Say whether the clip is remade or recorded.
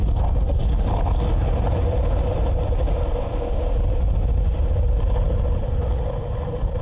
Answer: recorded